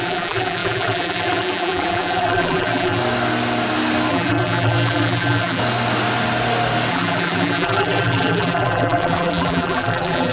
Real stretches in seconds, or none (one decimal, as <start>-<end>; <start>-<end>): 3.0-4.1; 5.6-6.9